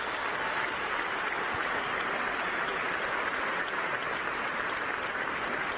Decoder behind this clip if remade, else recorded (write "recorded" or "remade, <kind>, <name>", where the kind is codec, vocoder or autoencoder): recorded